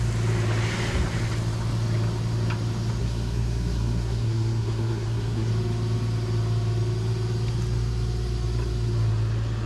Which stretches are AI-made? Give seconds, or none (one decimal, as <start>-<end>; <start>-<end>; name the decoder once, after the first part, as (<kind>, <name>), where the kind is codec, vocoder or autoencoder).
3.0-5.5 (codec, SNAC)

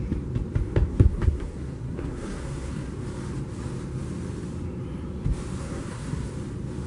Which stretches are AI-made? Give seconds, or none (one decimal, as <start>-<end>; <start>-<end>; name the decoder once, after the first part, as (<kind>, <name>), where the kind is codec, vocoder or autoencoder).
0.9-2.9 (codec, SNAC); 5.6-6.3